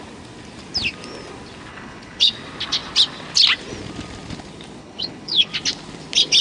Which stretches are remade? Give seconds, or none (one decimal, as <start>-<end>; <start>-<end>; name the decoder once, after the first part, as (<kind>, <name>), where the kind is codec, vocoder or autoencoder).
1.7-2.3 (codec, HILCodec); 4.8-5.5